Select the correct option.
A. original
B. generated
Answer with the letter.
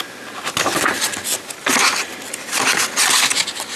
A